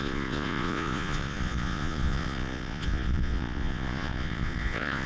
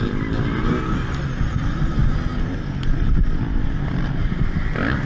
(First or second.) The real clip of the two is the second